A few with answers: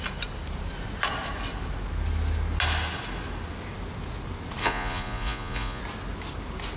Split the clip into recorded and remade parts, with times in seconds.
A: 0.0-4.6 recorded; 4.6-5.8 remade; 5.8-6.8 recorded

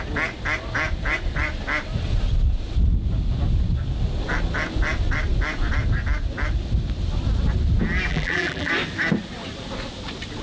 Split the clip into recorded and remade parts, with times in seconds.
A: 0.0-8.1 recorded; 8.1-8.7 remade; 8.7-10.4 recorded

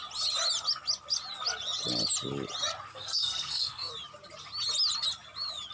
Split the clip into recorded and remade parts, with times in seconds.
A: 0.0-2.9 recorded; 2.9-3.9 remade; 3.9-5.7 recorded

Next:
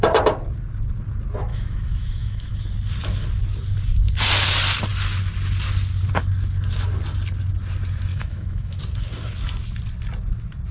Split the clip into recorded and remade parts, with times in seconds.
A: 0.0-1.5 recorded; 1.5-2.6 remade; 2.6-8.1 recorded; 8.1-8.8 remade; 8.8-10.7 recorded